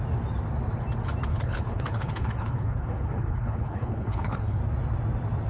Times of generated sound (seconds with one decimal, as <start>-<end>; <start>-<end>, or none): 1.3-4.6